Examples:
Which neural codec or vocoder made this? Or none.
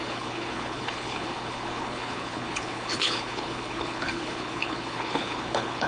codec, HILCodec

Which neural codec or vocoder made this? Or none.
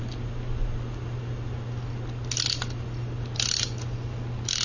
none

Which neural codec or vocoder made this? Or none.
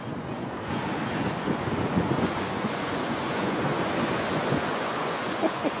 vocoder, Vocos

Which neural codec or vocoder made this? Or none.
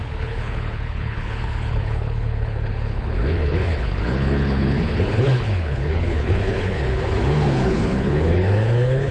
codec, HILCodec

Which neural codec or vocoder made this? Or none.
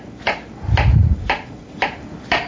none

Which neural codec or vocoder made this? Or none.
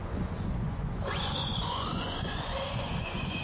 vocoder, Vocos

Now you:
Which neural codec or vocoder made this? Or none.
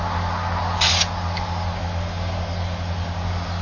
none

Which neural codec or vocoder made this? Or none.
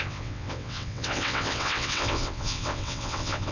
vocoder, WaveNeXt